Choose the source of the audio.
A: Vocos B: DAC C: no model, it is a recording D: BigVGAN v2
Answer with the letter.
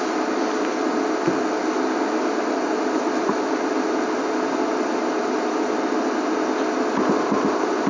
C